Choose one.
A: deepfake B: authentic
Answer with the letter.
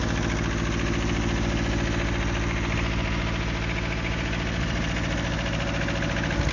B